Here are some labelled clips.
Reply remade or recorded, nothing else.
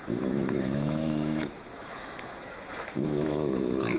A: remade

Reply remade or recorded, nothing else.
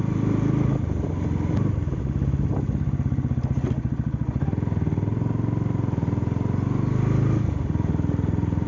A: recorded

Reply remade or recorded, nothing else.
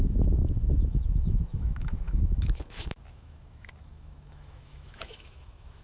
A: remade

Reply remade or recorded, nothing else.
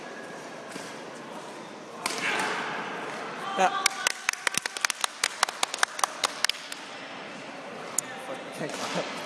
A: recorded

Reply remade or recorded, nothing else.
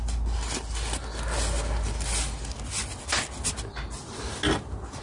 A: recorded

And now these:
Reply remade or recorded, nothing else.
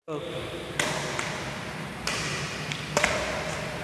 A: recorded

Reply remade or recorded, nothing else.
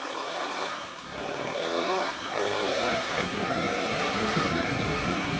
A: remade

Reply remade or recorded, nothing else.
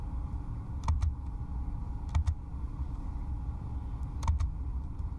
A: recorded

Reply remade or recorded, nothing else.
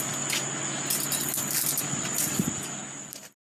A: recorded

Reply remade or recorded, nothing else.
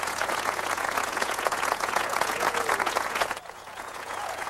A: remade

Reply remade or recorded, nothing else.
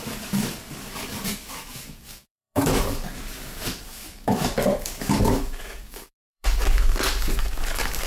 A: remade